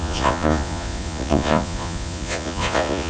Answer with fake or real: fake